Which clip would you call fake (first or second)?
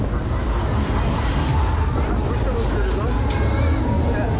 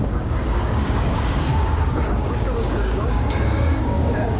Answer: second